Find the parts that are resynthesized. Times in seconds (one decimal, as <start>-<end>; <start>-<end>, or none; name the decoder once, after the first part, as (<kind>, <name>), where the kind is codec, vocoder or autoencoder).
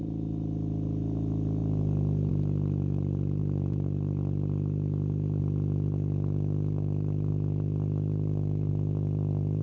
none